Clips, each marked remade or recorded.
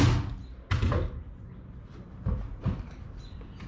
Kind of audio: recorded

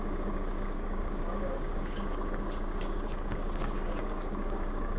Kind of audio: remade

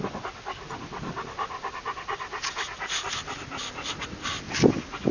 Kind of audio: recorded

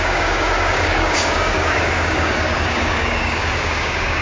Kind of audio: remade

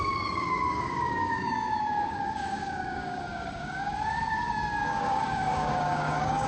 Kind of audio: remade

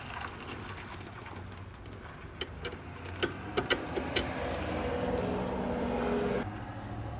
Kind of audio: recorded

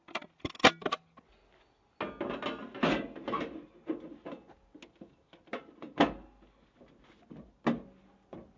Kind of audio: recorded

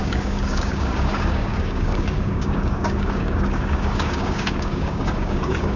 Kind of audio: remade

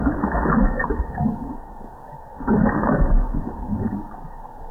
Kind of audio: remade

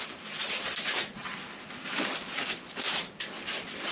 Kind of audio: recorded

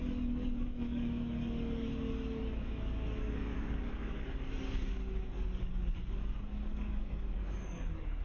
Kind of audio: remade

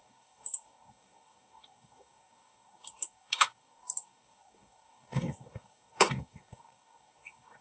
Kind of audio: remade